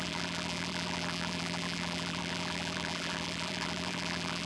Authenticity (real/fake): fake